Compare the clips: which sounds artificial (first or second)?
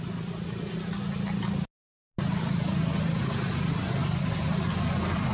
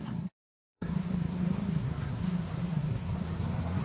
second